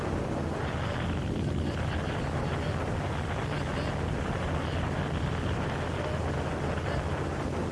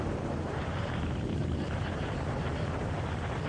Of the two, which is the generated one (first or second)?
second